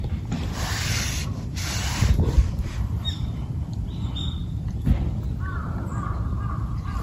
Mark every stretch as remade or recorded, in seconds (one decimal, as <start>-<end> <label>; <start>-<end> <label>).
0.0-5.9 remade; 5.9-6.5 recorded; 6.5-7.0 remade